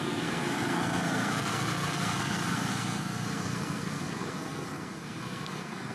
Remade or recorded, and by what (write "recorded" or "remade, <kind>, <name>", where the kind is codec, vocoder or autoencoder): remade, codec, SNAC